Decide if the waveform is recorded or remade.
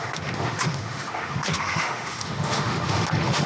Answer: remade